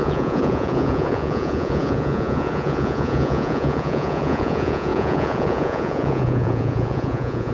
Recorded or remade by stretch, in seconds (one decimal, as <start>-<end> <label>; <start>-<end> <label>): 0.0-7.5 remade